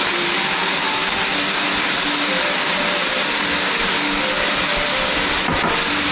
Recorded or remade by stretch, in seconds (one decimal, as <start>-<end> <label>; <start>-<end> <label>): 0.0-6.1 recorded